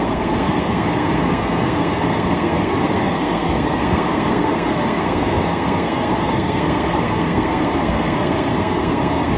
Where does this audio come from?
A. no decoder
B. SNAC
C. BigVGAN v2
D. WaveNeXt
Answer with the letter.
B